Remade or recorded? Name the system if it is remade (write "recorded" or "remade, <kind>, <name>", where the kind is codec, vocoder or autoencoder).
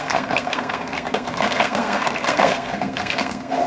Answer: remade, codec, SNAC